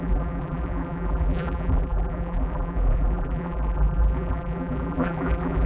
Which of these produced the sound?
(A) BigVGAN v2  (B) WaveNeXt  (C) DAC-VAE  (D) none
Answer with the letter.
A